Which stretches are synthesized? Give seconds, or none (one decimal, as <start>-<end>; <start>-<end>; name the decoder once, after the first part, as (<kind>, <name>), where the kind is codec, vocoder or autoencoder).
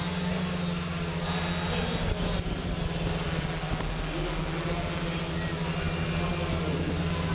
none